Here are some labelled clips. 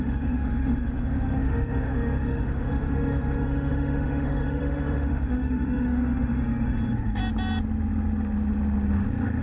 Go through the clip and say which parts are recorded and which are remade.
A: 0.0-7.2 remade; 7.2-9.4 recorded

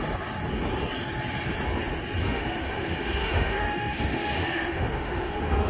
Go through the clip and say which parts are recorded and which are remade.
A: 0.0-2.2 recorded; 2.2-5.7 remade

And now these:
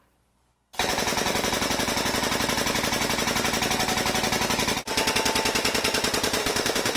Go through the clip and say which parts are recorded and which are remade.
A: 0.0-6.4 recorded; 6.4-7.0 remade

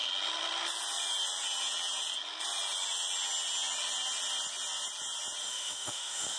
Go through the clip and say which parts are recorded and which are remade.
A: 0.0-5.4 recorded; 5.4-6.4 remade

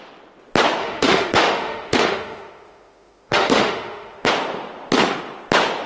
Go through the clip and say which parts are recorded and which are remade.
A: 0.0-0.8 recorded; 0.8-4.3 remade; 4.3-5.9 recorded